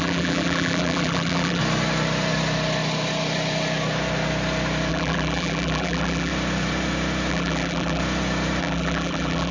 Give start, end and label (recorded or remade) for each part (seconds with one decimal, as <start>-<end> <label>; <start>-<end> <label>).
0.0-1.6 remade; 1.6-4.9 recorded; 4.9-6.3 remade; 6.3-7.3 recorded; 7.3-8.0 remade; 8.0-8.6 recorded; 8.6-9.5 remade

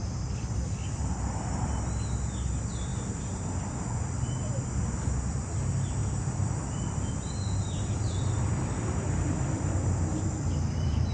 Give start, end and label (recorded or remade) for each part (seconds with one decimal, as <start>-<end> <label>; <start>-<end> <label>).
0.0-6.0 recorded; 6.0-11.1 remade

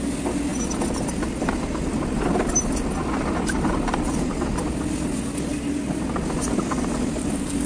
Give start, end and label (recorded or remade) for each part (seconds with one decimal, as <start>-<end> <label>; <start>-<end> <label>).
0.0-7.7 recorded

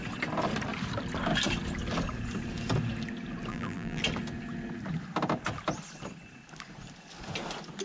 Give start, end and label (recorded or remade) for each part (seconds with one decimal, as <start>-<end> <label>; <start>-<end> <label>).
0.0-3.5 recorded; 3.5-4.0 remade; 4.0-7.8 recorded

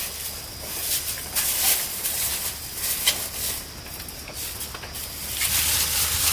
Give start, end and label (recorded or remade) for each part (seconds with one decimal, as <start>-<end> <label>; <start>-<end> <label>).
0.0-6.3 recorded